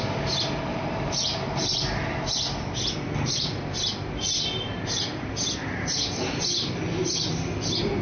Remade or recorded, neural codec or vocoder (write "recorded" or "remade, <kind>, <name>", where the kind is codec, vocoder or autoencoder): recorded